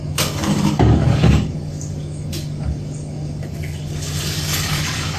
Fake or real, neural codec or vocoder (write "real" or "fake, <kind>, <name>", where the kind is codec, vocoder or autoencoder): fake, codec, DAC